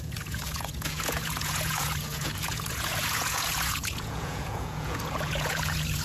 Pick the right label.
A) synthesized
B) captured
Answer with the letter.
A